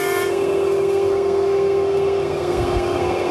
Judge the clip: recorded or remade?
remade